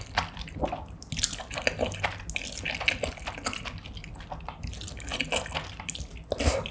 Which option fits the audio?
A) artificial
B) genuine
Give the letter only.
B